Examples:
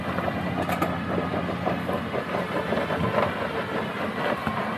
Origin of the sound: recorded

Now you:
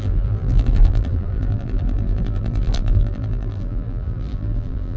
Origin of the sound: remade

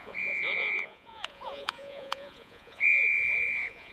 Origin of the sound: remade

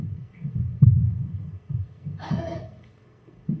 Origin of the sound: remade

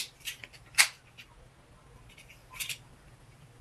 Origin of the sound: recorded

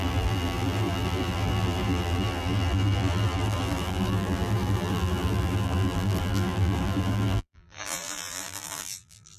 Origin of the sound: remade